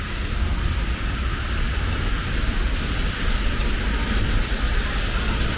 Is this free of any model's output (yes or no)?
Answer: yes